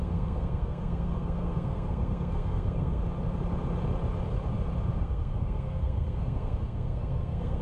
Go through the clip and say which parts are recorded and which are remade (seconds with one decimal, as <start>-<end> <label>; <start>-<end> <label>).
0.0-3.0 remade; 3.0-5.0 recorded; 5.0-7.6 remade